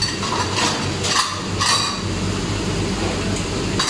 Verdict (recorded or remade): recorded